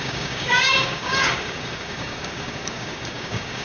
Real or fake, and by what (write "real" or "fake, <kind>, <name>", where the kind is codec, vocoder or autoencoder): fake, codec, DAC